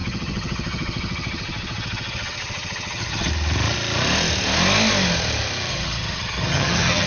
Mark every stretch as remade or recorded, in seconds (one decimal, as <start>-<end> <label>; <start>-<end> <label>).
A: 0.0-3.3 remade; 3.3-5.7 recorded; 5.7-7.1 remade